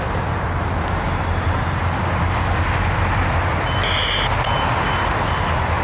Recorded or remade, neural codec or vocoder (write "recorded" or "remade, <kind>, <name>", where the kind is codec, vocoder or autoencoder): recorded